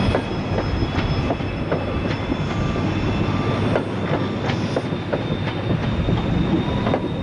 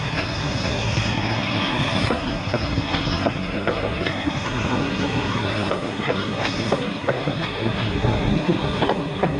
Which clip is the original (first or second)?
first